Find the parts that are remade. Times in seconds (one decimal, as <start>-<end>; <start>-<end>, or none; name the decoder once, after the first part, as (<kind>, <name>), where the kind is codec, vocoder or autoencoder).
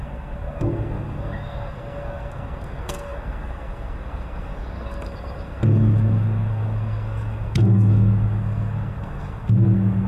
0.0-10.1 (codec, SNAC)